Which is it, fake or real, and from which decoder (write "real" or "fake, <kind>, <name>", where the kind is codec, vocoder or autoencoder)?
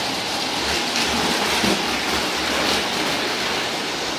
real